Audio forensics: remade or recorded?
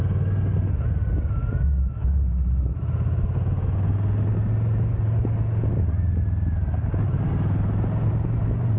recorded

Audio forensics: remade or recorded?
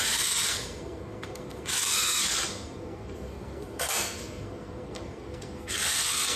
remade